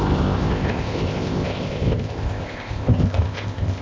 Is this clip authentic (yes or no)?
no